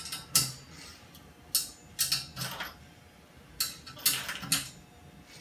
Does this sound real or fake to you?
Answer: real